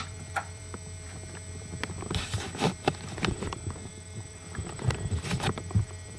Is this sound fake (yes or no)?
yes